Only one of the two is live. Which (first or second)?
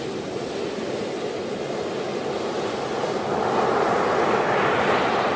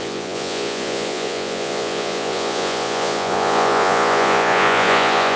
first